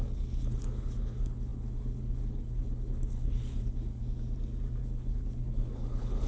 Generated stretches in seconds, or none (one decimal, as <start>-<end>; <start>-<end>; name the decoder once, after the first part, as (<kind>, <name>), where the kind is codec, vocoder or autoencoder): 0.0-4.0 (codec, HILCodec); 4.8-6.3